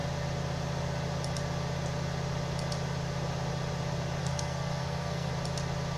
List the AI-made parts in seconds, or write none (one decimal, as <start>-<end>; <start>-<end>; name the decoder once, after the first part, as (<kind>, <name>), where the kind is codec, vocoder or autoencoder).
4.2-5.3 (codec, SNAC)

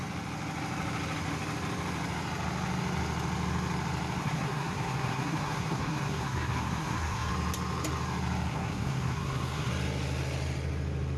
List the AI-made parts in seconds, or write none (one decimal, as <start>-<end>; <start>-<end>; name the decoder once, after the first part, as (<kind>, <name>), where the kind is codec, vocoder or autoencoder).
4.2-7.3 (codec, SNAC); 8.5-9.7

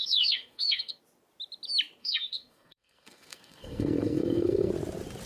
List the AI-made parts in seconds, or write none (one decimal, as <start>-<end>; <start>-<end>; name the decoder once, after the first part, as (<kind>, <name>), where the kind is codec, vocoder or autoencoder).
0.0-1.0 (codec, SNAC); 2.0-4.7

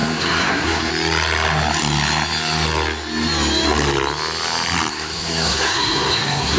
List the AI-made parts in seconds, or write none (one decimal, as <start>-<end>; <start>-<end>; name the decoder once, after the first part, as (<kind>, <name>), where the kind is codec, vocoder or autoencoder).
0.0-0.9 (codec, SNAC); 4.9-6.6

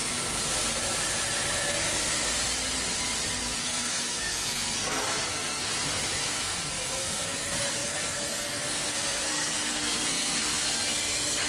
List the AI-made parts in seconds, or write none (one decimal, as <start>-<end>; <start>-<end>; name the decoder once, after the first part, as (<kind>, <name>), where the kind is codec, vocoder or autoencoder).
3.6-5.7 (codec, SNAC); 6.4-11.5